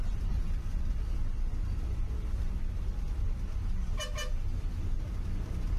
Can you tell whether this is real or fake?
real